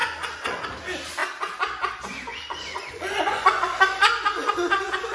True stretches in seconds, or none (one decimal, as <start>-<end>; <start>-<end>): 0.6-2.3; 4.5-5.1

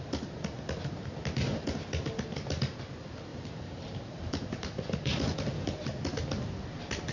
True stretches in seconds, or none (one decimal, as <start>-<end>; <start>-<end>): 0.0-3.3; 5.7-7.1

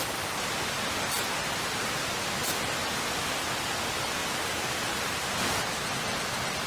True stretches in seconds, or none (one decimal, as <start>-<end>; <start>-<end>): 0.0-1.4; 2.1-2.8; 3.7-4.2; 5.9-6.7